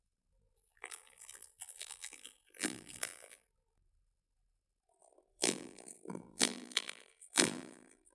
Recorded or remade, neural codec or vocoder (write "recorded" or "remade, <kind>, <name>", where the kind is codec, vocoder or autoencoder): remade, vocoder, BigVGAN v2